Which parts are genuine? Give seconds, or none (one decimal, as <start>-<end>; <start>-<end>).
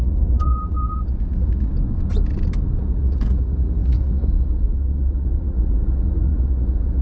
1.7-2.8